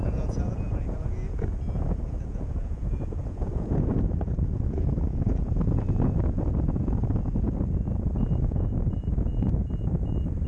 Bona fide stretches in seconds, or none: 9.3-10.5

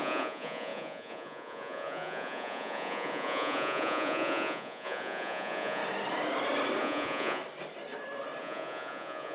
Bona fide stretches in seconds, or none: 5.8-6.8; 7.4-8.4

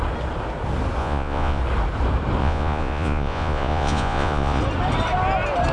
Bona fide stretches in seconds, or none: 0.0-1.0; 1.6-2.4; 4.6-5.7

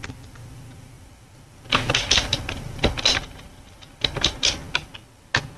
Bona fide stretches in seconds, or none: 0.0-5.6

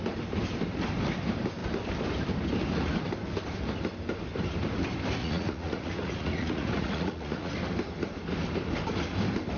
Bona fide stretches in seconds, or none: 0.0-5.2; 7.5-9.6

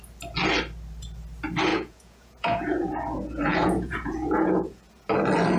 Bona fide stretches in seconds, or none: 0.0-1.7; 5.1-5.6

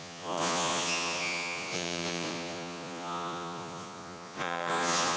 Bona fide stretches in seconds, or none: none